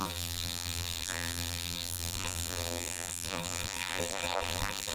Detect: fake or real fake